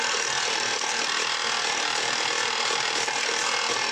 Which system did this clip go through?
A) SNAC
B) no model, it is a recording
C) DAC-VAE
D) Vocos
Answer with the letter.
B